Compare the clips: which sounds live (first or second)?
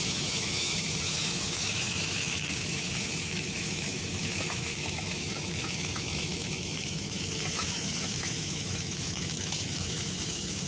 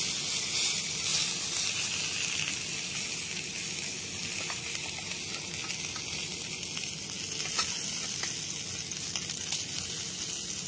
second